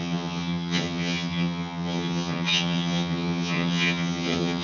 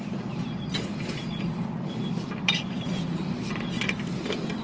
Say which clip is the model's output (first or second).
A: first